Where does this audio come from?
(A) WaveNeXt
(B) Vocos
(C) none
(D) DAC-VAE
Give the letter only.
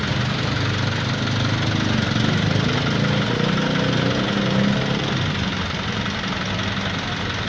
C